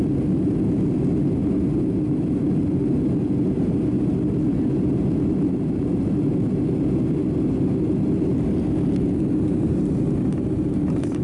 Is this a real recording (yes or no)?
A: yes